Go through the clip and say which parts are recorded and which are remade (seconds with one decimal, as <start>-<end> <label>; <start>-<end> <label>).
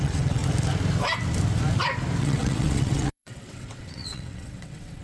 0.0-0.4 remade; 0.4-2.2 recorded; 2.2-5.0 remade